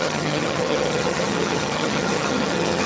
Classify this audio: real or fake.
fake